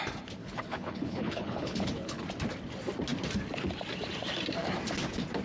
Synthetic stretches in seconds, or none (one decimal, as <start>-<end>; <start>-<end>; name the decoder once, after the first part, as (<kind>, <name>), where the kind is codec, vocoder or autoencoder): 0.4-2.2 (codec, HILCodec)